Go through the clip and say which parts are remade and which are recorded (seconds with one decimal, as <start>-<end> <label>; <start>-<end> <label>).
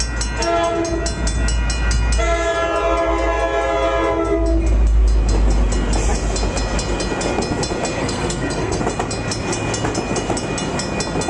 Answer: 0.0-8.0 recorded; 8.0-8.8 remade; 8.8-11.3 recorded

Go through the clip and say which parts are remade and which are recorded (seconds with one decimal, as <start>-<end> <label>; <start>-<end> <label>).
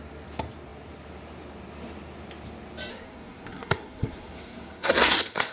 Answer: 0.0-2.9 recorded; 2.9-5.5 remade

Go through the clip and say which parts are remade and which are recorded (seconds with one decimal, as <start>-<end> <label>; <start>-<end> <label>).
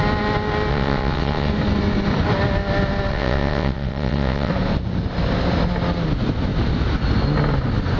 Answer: 0.0-0.7 recorded; 0.7-1.5 remade; 1.5-3.1 recorded; 3.1-4.5 remade; 4.5-8.0 recorded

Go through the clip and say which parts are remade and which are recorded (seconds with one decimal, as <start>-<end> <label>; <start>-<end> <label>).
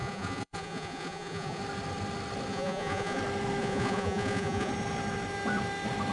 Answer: 0.0-1.6 remade; 1.6-2.5 recorded; 2.5-3.2 remade; 3.2-3.6 recorded; 3.6-4.7 remade; 4.7-6.1 recorded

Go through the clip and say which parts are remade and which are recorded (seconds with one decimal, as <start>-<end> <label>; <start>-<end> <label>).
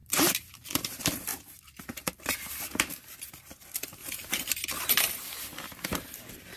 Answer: 0.0-6.6 recorded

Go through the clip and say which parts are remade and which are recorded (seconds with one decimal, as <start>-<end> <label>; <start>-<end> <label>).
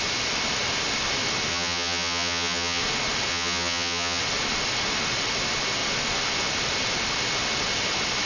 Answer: 0.0-1.5 recorded; 1.5-2.8 remade; 2.8-3.3 recorded; 3.3-4.2 remade; 4.2-8.3 recorded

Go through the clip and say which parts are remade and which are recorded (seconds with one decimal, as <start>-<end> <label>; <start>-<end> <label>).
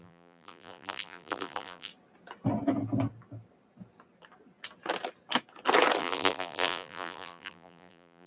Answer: 0.0-1.9 remade; 1.9-6.0 recorded; 6.0-8.3 remade